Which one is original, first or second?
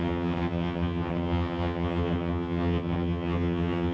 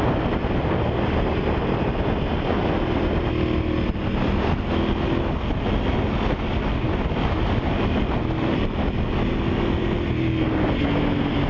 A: second